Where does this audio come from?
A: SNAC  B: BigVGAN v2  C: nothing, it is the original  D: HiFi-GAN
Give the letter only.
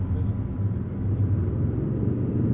C